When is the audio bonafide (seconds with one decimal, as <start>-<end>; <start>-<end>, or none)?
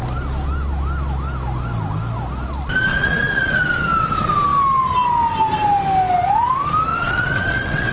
0.0-2.9; 3.6-6.9